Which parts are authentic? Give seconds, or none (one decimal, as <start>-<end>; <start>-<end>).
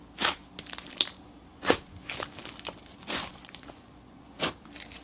0.0-1.5; 2.1-2.9; 4.5-5.0